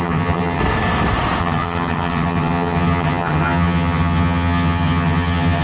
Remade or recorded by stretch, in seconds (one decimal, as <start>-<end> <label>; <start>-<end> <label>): 0.0-0.6 remade; 0.6-1.4 recorded; 1.4-5.6 remade